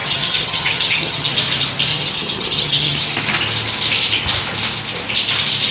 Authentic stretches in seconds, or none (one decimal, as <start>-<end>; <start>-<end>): 1.3-1.9; 3.0-5.7